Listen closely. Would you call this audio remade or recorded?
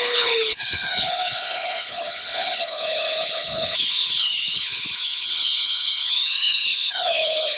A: remade